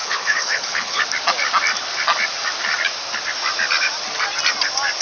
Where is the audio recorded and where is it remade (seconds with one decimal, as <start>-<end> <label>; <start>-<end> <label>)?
0.0-1.0 remade; 1.0-5.0 recorded